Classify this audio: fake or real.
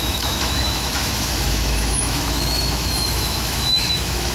fake